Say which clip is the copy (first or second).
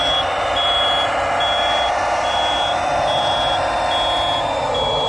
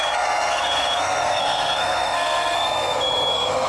second